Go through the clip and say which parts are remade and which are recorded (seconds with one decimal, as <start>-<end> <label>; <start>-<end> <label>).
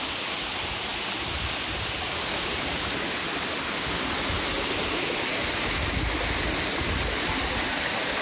0.0-8.2 recorded